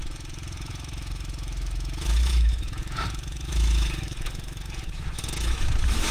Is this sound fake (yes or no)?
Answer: yes